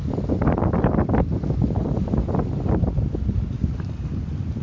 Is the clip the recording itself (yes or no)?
yes